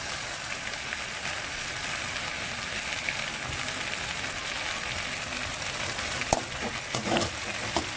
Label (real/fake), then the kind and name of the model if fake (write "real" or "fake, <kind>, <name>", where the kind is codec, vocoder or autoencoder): real